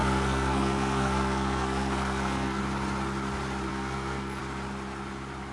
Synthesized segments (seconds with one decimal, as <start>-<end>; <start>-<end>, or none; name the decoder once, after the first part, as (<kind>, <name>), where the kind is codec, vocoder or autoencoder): 0.0-2.6 (codec, SNAC); 3.7-4.4